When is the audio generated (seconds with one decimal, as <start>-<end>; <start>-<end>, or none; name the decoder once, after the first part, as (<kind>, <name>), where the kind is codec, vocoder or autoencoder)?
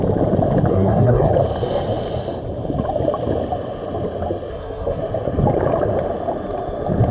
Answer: 0.7-1.3 (codec, SNAC); 4.5-5.0